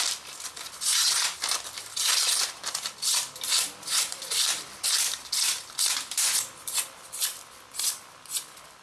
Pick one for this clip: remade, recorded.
remade